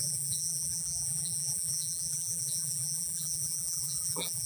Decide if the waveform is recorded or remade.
remade